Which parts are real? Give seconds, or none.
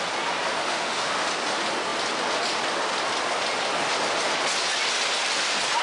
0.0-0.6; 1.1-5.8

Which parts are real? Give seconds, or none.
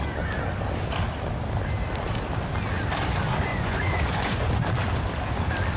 0.0-3.5; 4.5-5.8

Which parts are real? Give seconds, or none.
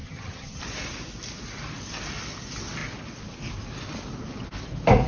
0.6-5.1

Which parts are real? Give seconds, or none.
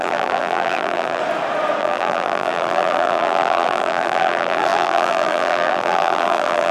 1.2-1.8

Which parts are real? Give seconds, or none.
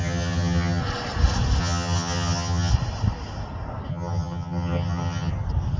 0.8-1.6; 2.7-3.9; 5.3-5.8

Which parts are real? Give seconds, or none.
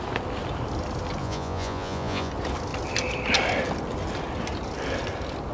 0.0-1.2; 2.3-5.5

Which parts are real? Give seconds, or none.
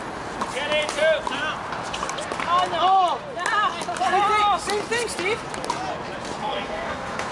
0.0-6.4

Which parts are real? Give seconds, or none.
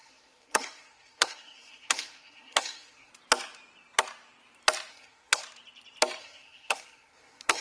3.1-4.9; 5.4-6.2